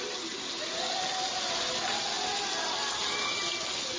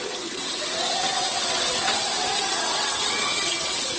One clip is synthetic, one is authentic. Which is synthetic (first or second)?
second